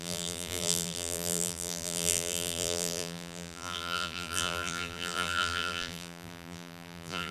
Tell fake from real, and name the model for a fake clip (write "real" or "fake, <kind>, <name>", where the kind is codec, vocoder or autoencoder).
fake, vocoder, BigVGAN v2